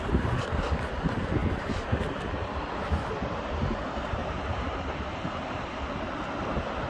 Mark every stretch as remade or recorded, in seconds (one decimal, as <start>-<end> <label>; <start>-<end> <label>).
0.0-4.2 recorded; 4.2-6.0 remade; 6.0-6.9 recorded